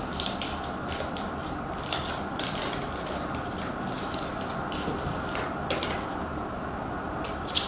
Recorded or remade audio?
remade